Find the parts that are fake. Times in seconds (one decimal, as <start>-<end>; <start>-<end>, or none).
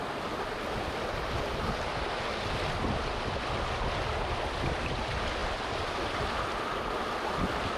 5.4-6.4